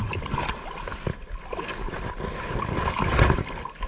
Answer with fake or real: real